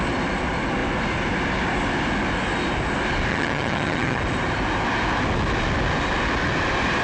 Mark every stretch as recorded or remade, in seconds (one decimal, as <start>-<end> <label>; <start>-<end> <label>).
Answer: 0.0-3.3 recorded; 3.3-4.2 remade; 4.2-7.0 recorded